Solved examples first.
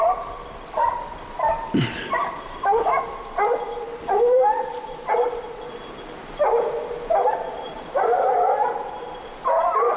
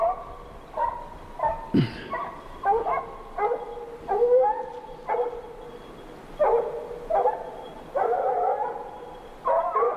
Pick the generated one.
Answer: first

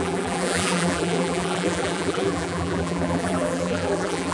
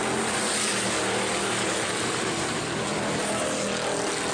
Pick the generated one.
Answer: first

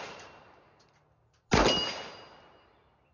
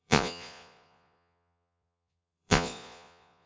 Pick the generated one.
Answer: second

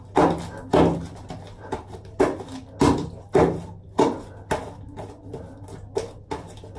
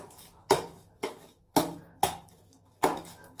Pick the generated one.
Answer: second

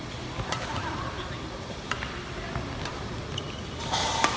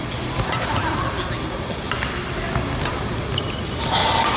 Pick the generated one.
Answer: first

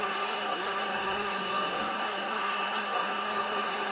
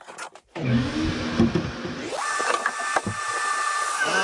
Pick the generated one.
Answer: first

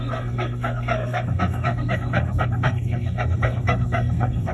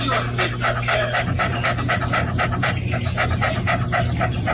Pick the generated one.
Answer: first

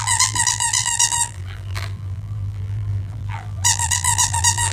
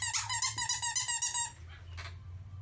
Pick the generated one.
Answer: first